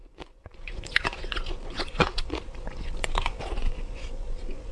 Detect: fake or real fake